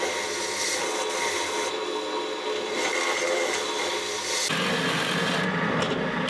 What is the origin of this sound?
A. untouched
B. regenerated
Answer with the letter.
A